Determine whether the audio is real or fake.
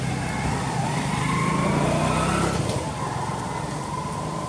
real